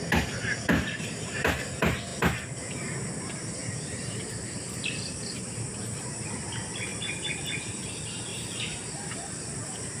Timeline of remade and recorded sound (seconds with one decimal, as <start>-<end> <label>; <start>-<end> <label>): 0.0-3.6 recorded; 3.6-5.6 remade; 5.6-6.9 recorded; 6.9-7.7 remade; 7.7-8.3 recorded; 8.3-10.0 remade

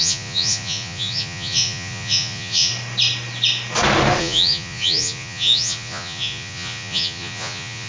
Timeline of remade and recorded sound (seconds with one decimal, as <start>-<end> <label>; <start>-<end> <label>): 0.0-2.7 remade; 2.7-4.2 recorded; 4.2-7.9 remade

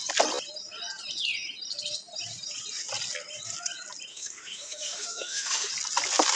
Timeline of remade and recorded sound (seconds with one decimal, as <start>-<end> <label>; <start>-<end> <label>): 0.0-4.1 recorded; 4.1-5.7 remade; 5.7-6.4 recorded

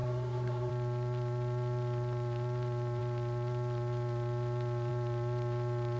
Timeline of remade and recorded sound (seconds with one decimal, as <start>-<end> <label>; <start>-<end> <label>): 0.0-0.7 remade; 0.7-6.0 recorded

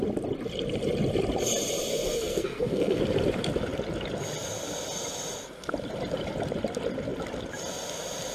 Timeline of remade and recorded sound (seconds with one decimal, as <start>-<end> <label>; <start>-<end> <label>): 0.0-1.9 recorded; 1.9-3.0 remade; 3.0-8.3 recorded

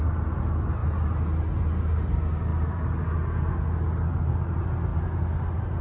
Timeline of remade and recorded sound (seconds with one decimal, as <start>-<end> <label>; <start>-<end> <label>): 0.0-5.8 recorded

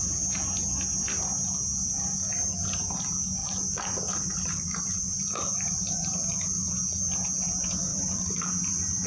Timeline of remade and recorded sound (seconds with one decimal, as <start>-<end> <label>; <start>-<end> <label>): 0.0-3.4 recorded; 3.4-6.7 remade; 6.7-7.9 recorded; 7.9-9.1 remade